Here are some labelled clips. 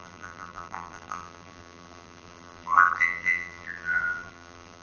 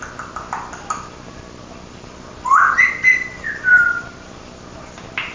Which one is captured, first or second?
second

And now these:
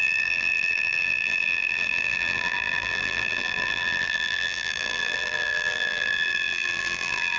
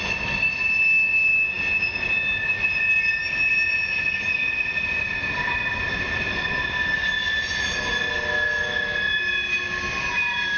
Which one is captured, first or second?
second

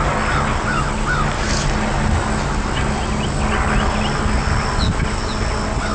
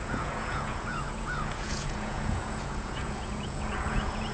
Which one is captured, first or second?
first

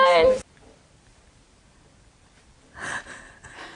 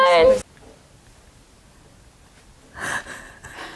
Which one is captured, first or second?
second